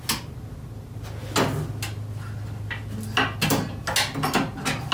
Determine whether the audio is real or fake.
real